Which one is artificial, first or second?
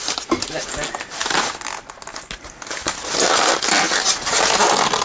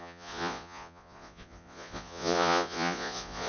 second